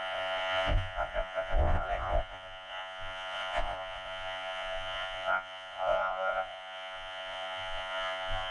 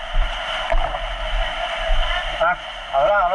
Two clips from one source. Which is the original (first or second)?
second